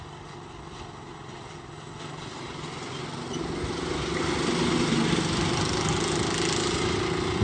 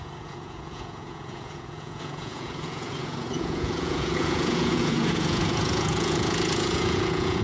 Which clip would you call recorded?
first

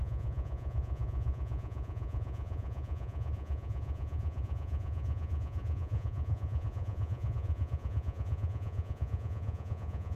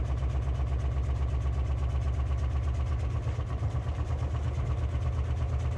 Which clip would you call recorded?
second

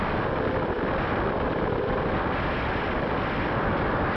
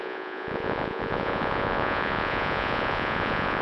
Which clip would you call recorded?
first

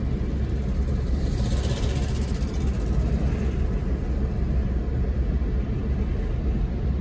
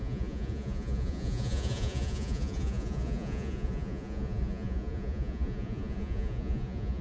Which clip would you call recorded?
first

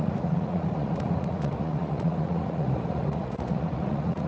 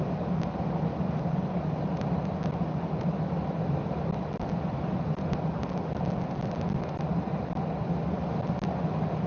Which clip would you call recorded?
second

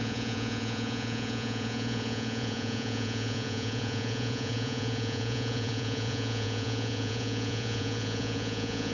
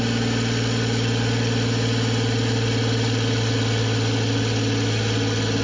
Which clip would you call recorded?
second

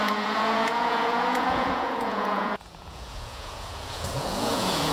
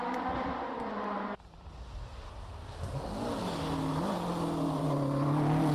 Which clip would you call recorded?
second